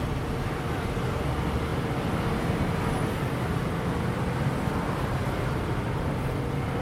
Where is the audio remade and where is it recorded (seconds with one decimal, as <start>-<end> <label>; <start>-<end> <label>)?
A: 0.0-3.0 recorded; 3.0-3.8 remade; 3.8-5.2 recorded; 5.2-6.2 remade; 6.2-6.8 recorded